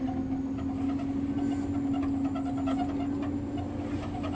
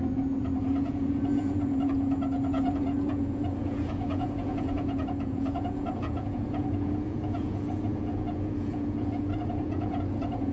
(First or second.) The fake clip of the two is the second